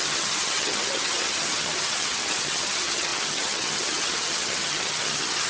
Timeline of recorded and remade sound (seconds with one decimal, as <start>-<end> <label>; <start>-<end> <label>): 0.0-5.5 remade